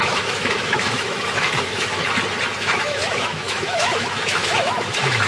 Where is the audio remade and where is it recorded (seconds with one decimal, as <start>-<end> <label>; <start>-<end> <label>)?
0.0-2.0 remade; 2.0-2.6 recorded; 2.6-5.3 remade